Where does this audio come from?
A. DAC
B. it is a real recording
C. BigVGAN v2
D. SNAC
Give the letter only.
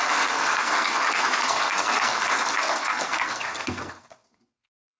D